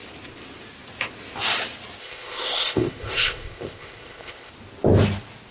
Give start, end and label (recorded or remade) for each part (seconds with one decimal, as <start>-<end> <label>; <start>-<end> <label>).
0.0-2.0 recorded; 2.0-4.5 remade; 4.5-5.5 recorded